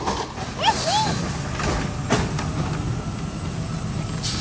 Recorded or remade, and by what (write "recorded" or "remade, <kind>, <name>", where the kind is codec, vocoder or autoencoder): recorded